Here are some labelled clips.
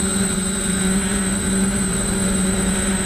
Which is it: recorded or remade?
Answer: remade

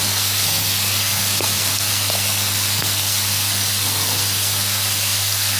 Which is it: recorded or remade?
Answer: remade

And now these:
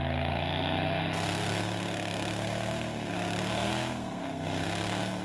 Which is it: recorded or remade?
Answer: remade